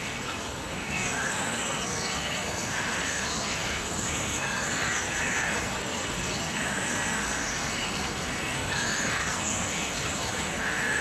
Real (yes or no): no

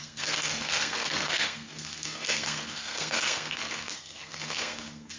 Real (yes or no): no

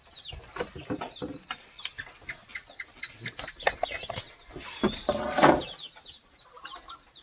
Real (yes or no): yes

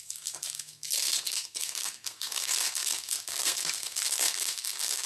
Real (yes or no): no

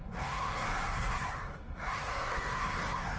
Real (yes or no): no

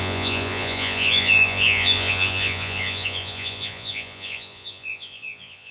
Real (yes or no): no